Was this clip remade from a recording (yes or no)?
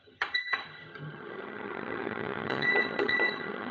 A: yes